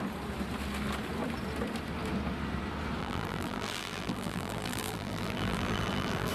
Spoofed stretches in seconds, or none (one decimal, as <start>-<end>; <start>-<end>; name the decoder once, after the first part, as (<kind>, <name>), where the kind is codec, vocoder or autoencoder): 3.0-6.3 (vocoder, BigVGAN v2)

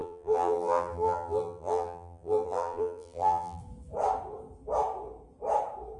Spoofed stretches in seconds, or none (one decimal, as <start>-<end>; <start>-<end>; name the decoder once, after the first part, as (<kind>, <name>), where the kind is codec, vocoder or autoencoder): 0.0-3.6 (vocoder, BigVGAN v2)

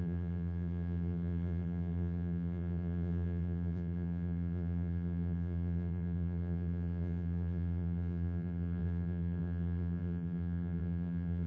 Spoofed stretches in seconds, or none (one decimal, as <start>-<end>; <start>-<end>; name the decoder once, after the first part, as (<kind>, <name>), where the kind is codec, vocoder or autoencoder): 0.0-11.5 (vocoder, BigVGAN v2)

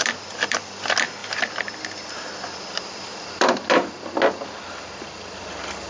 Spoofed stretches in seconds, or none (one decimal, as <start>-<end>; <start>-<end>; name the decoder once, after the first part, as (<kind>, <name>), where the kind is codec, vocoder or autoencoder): 1.2-3.9 (vocoder, BigVGAN v2)

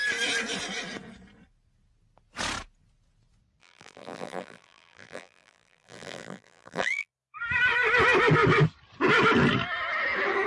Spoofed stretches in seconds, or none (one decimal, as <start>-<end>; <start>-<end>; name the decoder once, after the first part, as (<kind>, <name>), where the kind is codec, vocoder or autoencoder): 3.6-7.1 (vocoder, BigVGAN v2)